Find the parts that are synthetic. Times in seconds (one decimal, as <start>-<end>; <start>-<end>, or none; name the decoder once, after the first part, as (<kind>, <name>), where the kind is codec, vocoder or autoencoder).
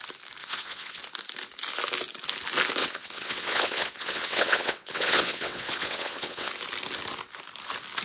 0.4-1.0 (vocoder, WaveNeXt); 2.8-6.5